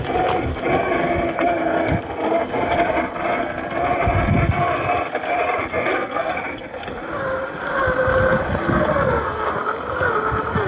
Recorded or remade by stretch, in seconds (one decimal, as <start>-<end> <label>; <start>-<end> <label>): 0.0-5.7 recorded; 5.7-6.3 remade; 6.3-8.9 recorded; 8.9-9.5 remade; 9.5-10.7 recorded